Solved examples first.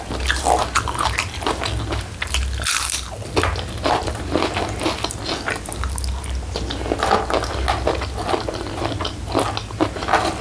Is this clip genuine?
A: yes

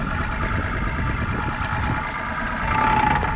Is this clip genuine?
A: yes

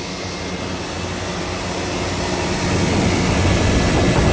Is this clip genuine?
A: yes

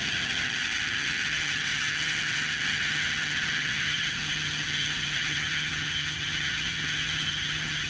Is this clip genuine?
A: no